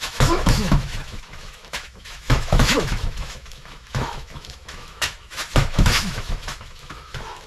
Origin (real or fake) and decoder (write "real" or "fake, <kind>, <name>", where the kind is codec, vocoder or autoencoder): fake, autoencoder, DAC-VAE